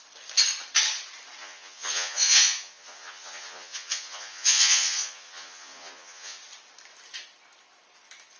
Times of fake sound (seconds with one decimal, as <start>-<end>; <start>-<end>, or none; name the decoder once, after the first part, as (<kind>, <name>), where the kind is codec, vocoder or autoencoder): 1.4-6.4 (vocoder, Vocos)